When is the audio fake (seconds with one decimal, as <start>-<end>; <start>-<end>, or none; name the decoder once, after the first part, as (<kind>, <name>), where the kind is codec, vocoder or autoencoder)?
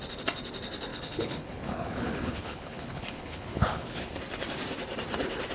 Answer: 0.9-4.2 (codec, HILCodec)